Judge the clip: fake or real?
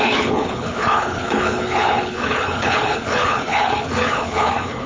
fake